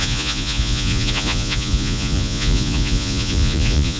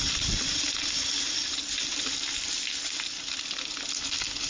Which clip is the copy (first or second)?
first